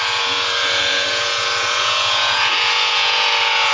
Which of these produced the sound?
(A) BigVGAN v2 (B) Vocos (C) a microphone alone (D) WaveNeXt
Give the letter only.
B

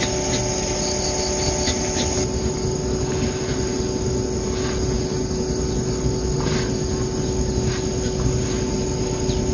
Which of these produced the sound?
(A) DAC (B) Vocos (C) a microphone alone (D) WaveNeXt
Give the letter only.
C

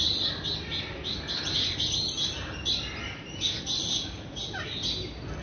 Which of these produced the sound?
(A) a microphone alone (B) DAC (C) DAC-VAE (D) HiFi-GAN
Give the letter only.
A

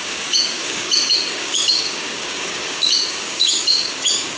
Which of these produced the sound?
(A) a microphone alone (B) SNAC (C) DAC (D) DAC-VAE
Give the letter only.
C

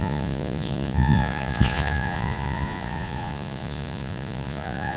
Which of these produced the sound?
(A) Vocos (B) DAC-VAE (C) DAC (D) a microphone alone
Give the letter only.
A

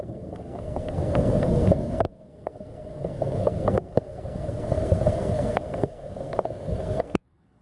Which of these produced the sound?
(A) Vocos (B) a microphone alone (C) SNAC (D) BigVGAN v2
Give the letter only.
C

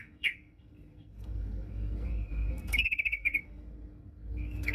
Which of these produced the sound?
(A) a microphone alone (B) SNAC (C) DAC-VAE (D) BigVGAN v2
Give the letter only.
B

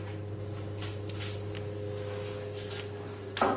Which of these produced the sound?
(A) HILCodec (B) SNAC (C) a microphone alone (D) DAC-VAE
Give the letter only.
C